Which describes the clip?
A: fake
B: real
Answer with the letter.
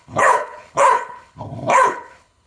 A